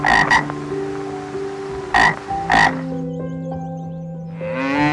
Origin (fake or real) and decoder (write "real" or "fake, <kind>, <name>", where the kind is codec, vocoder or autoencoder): real